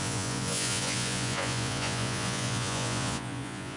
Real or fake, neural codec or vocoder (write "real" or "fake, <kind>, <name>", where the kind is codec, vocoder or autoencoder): fake, vocoder, Vocos